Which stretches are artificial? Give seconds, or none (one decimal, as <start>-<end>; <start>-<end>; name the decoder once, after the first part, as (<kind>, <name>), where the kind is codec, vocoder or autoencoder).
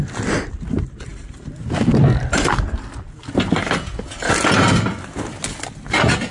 none